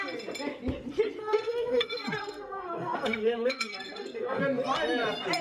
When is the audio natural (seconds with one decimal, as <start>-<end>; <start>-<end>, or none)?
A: 0.0-1.2; 4.4-5.4